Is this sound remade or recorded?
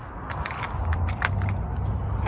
recorded